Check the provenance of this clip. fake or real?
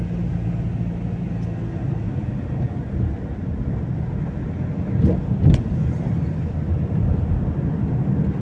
real